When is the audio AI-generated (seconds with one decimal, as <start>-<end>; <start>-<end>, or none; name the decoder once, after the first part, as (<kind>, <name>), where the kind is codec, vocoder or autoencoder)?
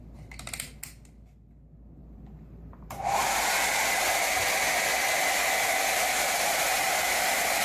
2.0-3.2 (vocoder, BigVGAN v2)